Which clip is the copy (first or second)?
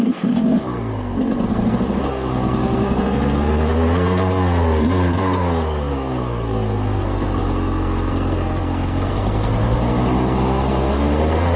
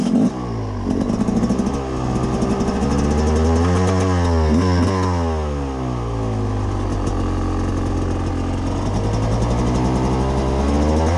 first